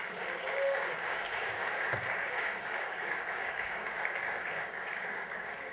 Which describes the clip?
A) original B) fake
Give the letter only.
B